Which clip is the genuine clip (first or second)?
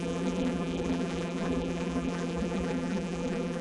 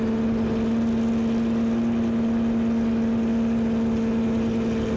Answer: second